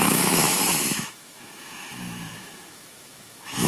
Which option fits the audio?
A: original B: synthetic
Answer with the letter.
B